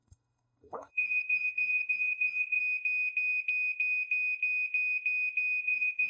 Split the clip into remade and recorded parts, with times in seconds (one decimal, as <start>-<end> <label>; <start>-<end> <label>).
0.0-2.6 remade; 2.6-5.6 recorded; 5.6-6.1 remade